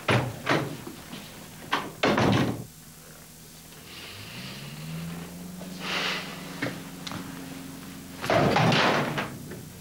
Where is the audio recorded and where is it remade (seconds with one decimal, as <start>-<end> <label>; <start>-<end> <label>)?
0.0-3.8 recorded; 3.8-4.7 remade; 4.7-9.8 recorded